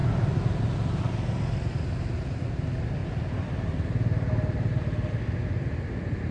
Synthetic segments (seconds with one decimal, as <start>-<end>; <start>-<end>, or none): none